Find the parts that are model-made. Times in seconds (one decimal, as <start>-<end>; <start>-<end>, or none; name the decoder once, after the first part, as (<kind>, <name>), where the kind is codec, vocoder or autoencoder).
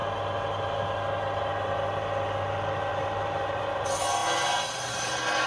none